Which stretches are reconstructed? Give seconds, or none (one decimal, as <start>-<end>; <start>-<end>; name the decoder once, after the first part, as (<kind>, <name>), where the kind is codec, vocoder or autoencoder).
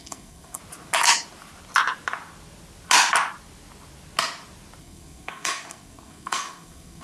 0.0-0.6 (codec, SNAC); 4.8-7.0